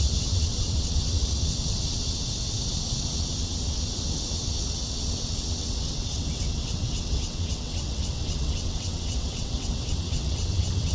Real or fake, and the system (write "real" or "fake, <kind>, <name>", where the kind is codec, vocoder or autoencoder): fake, vocoder, WaveNeXt